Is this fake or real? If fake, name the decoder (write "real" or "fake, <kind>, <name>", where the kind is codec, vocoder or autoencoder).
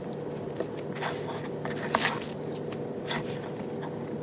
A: real